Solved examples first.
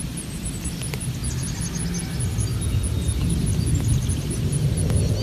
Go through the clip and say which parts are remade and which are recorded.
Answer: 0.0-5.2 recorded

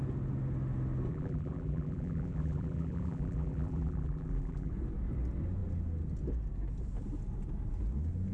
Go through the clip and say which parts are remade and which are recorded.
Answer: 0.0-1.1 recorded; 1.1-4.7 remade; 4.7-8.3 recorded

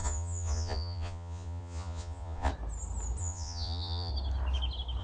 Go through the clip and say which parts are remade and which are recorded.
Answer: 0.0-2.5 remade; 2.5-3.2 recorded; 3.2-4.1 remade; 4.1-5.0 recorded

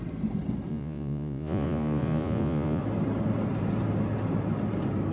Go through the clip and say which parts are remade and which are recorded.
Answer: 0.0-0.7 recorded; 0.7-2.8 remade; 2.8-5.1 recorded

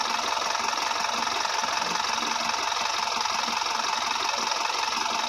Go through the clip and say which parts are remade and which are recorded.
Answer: 0.0-5.3 recorded